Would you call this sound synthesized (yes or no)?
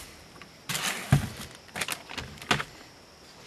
no